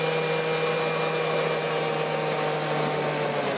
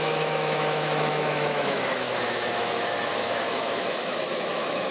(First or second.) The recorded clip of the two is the first